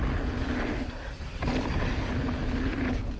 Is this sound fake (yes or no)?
no